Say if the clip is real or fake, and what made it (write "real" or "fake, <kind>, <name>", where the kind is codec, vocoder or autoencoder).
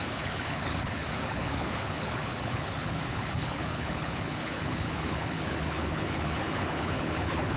fake, codec, HILCodec